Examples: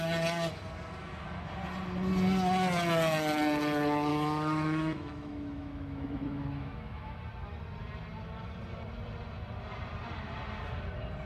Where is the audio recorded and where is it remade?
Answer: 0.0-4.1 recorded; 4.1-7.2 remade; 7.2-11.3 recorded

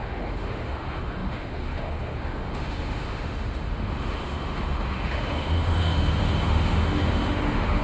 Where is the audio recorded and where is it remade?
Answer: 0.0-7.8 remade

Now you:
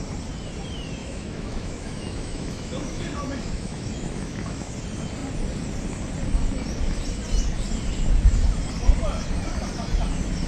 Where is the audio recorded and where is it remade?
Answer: 0.0-1.0 recorded; 1.0-4.7 remade; 4.7-10.5 recorded

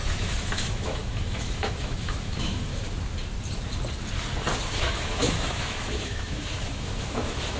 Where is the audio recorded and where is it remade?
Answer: 0.0-2.7 remade; 2.7-4.8 recorded; 4.8-7.6 remade

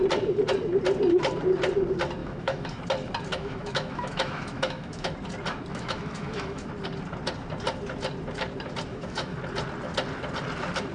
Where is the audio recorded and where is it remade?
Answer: 0.0-2.2 recorded; 2.2-2.8 remade; 2.8-3.3 recorded; 3.3-5.1 remade; 5.1-5.7 recorded; 5.7-6.7 remade; 6.7-8.9 recorded; 8.9-9.4 remade; 9.4-10.9 recorded

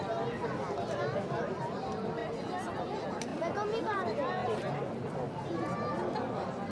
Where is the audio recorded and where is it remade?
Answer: 0.0-6.7 recorded

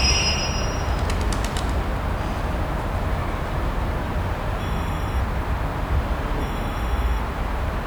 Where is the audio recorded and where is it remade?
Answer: 0.0-4.6 recorded; 4.6-5.2 remade; 5.2-6.4 recorded; 6.4-7.2 remade; 7.2-7.9 recorded

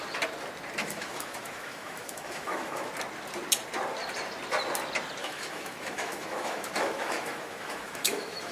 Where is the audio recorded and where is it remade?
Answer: 0.0-0.8 recorded; 0.8-2.9 remade; 2.9-5.2 recorded; 5.2-8.5 remade